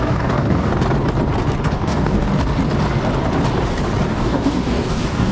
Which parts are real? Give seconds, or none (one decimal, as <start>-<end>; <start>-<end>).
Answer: 0.7-1.6; 2.3-4.1